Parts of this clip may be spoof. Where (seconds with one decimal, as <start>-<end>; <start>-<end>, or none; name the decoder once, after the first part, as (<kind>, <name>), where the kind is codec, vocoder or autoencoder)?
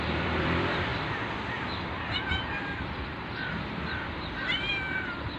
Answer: 0.0-0.9 (vocoder, BigVGAN v2); 4.1-5.4